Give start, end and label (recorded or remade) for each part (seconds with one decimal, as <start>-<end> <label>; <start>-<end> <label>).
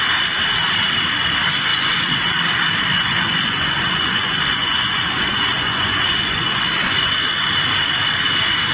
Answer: 0.0-1.7 recorded; 1.7-2.3 remade; 2.3-2.9 recorded; 2.9-7.5 remade; 7.5-8.7 recorded